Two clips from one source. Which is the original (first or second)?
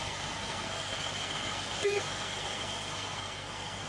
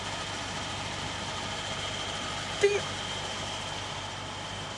second